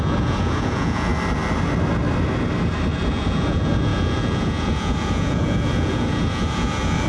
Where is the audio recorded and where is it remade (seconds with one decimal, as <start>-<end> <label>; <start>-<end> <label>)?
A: 0.0-1.1 remade; 1.1-3.1 recorded; 3.1-7.1 remade

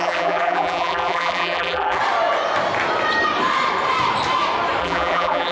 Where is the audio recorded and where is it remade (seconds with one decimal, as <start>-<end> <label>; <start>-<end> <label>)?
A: 0.0-2.0 remade; 2.0-4.8 recorded; 4.8-5.5 remade

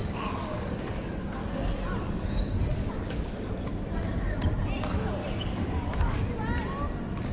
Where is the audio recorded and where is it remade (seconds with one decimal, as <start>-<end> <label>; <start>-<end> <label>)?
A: 0.0-0.9 remade; 0.9-1.4 recorded; 1.4-3.5 remade; 3.5-5.2 recorded; 5.2-6.2 remade; 6.2-7.3 recorded

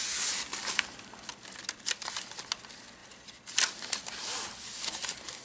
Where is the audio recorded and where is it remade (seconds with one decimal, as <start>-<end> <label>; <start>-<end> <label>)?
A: 0.0-5.4 recorded

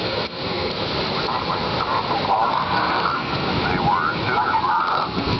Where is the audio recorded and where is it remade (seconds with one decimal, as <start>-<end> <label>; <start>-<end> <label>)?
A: 0.0-0.7 remade; 0.7-2.5 recorded; 2.5-3.5 remade; 3.5-4.8 recorded; 4.8-5.4 remade

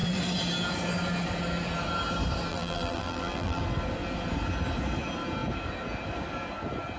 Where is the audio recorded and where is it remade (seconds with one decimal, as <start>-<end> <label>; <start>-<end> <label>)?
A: 0.0-2.5 recorded; 2.5-3.6 remade; 3.6-7.0 recorded